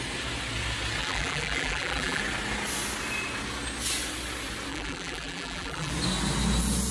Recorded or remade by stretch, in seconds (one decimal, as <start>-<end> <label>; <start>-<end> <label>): 0.0-1.0 recorded; 1.0-2.2 remade; 2.2-4.7 recorded; 4.7-5.9 remade; 5.9-6.9 recorded